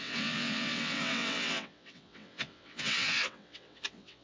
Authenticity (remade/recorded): remade